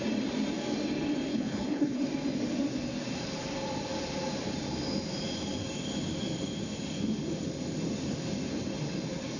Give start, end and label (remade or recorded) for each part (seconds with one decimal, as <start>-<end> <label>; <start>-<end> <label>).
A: 0.0-1.3 recorded; 1.3-2.0 remade; 2.0-9.4 recorded